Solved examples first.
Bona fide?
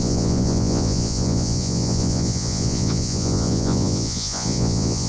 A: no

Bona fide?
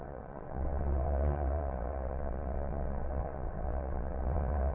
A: no